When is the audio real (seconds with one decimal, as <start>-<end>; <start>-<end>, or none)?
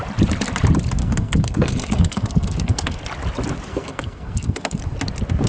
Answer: 0.0-1.0; 3.0-3.7; 4.8-5.5